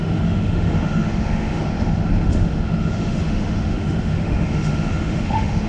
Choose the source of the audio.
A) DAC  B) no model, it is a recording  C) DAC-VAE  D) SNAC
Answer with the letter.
C